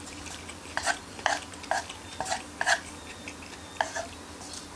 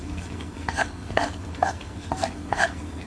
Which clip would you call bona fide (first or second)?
first